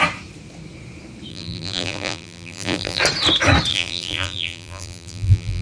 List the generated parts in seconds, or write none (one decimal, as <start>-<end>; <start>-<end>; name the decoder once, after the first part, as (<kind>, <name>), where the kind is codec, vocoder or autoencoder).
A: 1.3-3.0 (vocoder, BigVGAN v2); 3.7-5.6